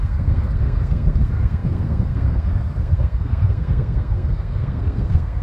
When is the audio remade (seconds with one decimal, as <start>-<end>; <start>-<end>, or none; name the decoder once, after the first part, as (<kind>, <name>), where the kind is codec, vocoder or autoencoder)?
0.0-5.4 (codec, SNAC)